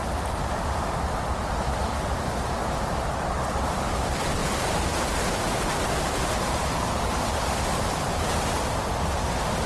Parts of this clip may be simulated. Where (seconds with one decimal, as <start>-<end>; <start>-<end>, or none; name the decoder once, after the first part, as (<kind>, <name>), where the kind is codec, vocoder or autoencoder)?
0.6-9.7 (vocoder, BigVGAN v2)